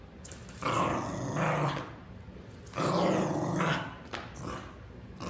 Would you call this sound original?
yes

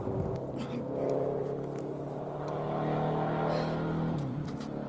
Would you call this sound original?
yes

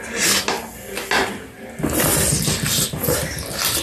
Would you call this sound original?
yes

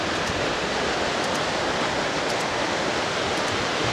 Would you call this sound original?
yes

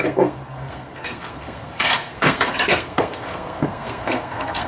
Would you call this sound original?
no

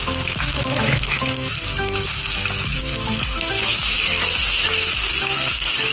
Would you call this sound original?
no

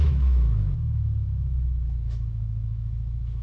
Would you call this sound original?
no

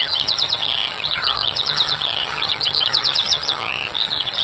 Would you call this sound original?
no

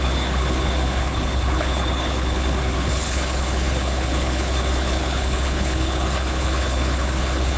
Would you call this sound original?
no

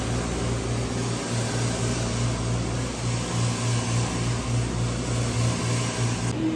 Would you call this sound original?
yes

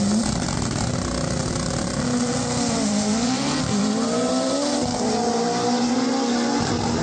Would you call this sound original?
yes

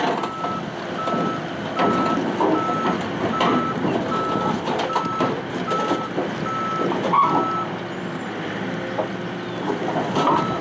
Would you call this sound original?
yes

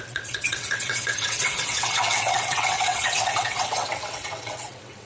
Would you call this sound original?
no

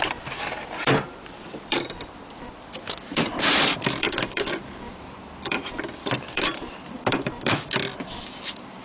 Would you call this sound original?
no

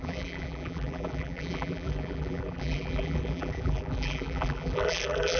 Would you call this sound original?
no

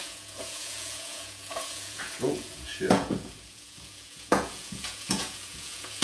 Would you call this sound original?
no